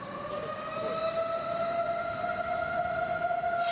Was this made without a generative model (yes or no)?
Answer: yes